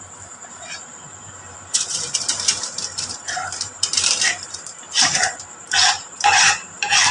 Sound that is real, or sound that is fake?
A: fake